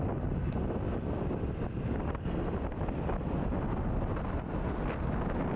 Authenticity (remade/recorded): recorded